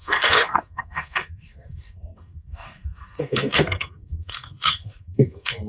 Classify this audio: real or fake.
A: fake